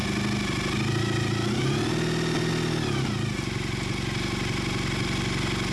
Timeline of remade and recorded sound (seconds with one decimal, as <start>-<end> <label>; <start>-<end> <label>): 0.0-5.7 recorded